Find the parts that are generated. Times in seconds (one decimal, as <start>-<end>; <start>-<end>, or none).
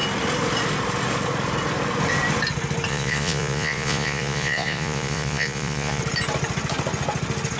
2.9-6.0